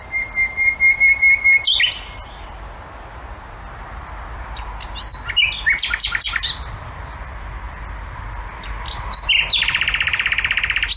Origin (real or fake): real